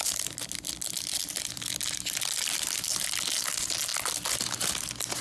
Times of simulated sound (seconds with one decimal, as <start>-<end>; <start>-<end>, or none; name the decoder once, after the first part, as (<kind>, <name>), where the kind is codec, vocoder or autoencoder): none